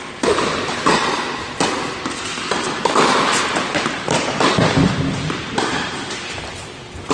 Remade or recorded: remade